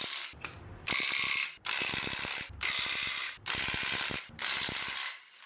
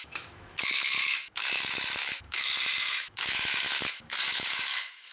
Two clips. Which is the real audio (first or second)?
first